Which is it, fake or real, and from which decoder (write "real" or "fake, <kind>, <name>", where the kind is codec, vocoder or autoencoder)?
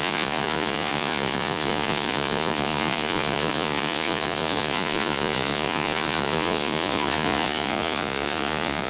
fake, vocoder, Vocos